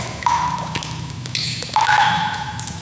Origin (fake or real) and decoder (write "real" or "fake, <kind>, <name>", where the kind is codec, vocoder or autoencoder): fake, autoencoder, DAC-VAE